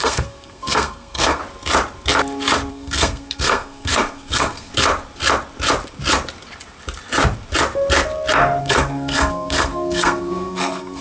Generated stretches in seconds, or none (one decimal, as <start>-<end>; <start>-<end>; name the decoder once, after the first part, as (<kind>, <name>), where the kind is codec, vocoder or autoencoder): 0.0-1.4 (codec, SNAC); 2.7-4.7; 8.6-11.0